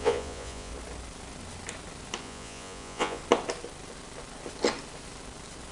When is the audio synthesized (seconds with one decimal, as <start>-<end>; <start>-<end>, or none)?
0.0-0.7; 2.2-3.2